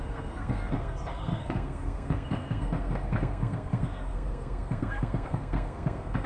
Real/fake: fake